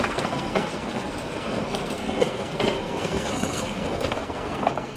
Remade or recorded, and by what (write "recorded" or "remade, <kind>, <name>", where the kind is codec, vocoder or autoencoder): remade, codec, SNAC